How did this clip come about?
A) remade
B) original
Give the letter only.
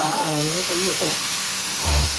A